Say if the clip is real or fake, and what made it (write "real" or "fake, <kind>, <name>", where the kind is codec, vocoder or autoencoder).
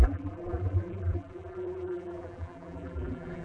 fake, vocoder, BigVGAN v2